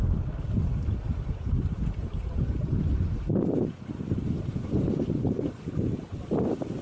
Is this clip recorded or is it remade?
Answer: recorded